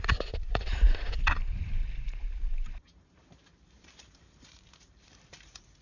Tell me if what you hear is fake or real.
fake